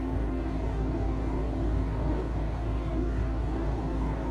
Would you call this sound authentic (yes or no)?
no